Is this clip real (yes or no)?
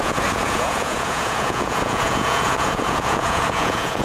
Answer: no